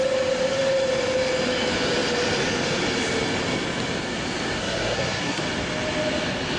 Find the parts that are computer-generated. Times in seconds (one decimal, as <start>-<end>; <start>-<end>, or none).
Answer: 4.6-5.4